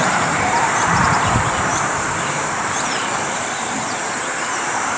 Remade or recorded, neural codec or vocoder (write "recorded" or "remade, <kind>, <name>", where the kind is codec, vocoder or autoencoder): remade, vocoder, BigVGAN v2